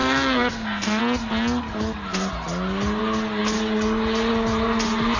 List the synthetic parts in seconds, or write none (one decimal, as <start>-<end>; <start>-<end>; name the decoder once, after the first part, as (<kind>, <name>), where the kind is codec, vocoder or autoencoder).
0.0-1.0 (codec, SNAC)